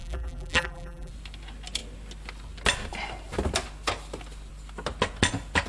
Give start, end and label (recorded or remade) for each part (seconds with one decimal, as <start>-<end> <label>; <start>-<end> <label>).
0.0-1.1 remade; 1.1-5.7 recorded